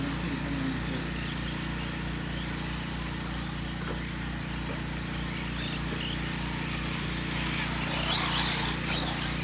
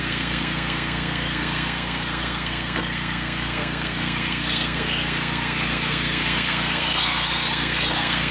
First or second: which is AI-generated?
second